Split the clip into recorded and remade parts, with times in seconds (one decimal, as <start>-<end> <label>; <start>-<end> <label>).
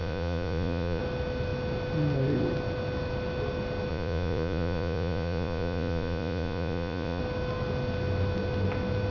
0.0-1.0 remade; 1.0-3.9 recorded; 3.9-7.2 remade; 7.2-9.1 recorded